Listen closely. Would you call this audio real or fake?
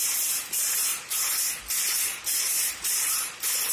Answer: real